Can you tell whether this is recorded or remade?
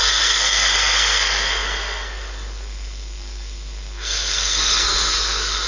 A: remade